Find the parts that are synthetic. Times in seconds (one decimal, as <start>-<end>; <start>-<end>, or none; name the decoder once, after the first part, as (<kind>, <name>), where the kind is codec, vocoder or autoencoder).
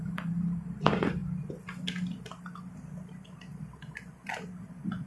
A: 0.0-1.2 (vocoder, BigVGAN v2); 2.3-5.1